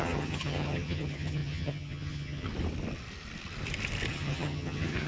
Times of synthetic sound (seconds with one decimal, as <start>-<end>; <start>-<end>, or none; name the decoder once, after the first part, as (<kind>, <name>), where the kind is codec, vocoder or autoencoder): 0.0-2.5 (vocoder, HiFi-GAN); 4.1-5.1